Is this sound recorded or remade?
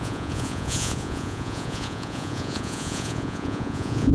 remade